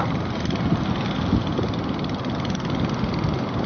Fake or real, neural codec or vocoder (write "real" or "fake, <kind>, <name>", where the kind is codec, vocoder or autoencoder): real